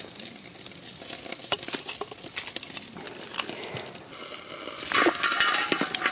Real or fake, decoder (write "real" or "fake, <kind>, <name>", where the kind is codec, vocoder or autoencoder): real